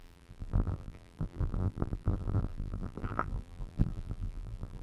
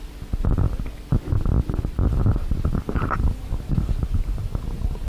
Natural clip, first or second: second